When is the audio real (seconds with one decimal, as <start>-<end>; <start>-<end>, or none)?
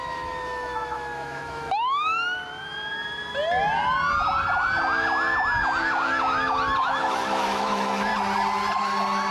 2.4-6.8; 8.1-9.3